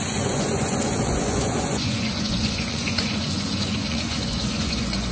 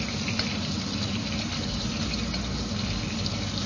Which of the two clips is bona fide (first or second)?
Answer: second